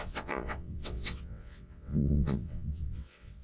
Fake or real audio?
fake